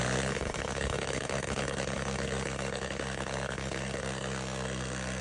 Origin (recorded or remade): remade